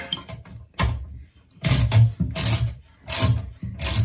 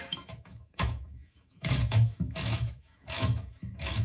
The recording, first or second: first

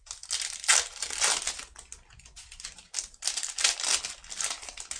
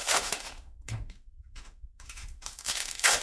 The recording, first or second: first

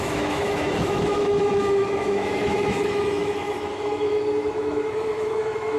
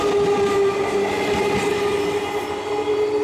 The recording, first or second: second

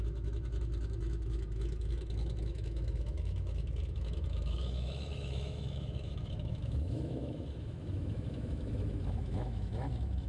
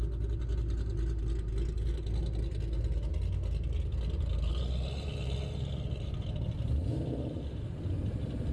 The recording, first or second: second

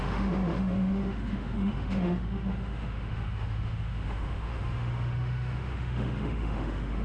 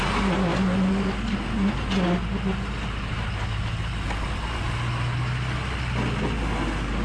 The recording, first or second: second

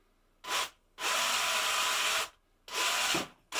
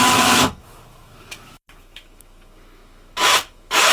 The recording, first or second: first